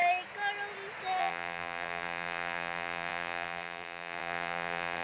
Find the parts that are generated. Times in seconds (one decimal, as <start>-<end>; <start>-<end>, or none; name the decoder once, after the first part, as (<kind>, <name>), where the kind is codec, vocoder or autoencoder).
1.2-5.0 (vocoder, BigVGAN v2)